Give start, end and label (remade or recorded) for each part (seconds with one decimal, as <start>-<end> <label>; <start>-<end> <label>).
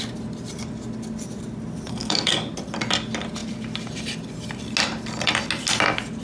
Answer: 0.0-1.9 recorded; 1.9-2.5 remade; 2.5-6.2 recorded